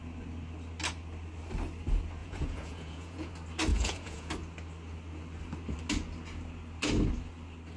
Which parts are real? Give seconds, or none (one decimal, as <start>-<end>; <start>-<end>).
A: 0.0-2.2; 3.3-3.7; 4.3-7.8